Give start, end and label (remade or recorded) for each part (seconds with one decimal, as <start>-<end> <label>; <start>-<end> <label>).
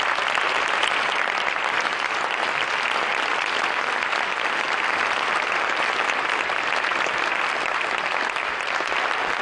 0.0-1.9 recorded; 1.9-5.7 remade; 5.7-6.9 recorded; 6.9-9.4 remade